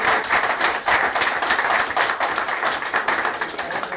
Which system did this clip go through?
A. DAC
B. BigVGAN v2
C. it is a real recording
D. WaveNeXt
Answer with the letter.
B